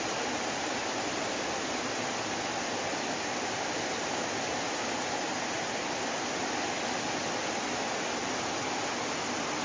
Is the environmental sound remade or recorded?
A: recorded